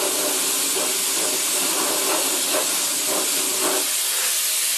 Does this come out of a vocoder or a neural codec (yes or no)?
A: no